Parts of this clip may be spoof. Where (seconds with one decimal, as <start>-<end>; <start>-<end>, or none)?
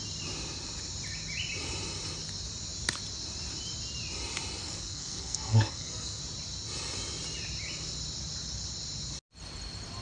4.6-6.2